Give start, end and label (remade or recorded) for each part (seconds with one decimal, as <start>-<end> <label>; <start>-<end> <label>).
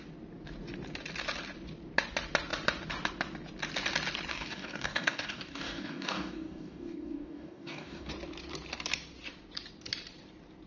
0.0-4.3 recorded; 4.3-8.1 remade; 8.1-10.7 recorded